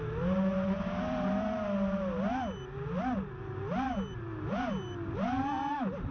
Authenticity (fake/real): real